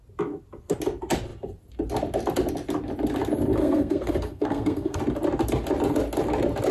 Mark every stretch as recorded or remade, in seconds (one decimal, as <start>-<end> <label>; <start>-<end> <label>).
0.0-3.6 recorded; 3.6-5.0 remade; 5.0-6.7 recorded